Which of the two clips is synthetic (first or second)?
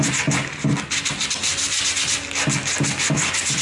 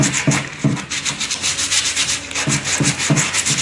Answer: second